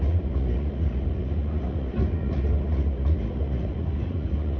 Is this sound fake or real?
fake